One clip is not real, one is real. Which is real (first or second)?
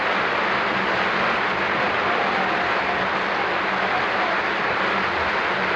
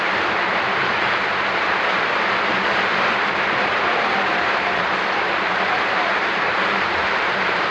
first